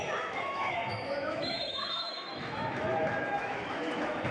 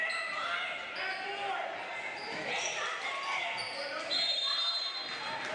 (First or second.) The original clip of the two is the second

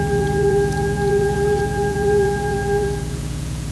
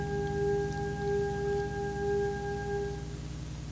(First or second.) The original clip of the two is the second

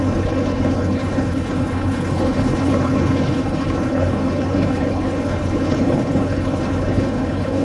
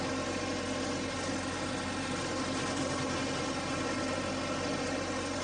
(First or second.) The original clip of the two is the second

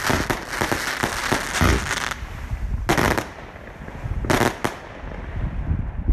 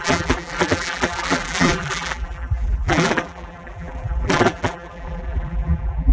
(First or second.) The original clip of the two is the first